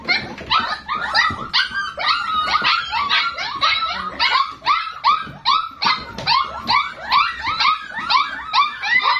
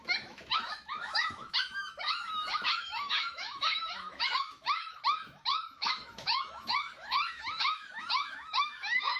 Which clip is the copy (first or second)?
second